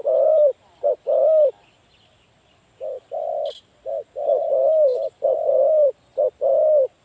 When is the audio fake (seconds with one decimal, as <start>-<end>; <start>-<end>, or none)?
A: 0.0-0.7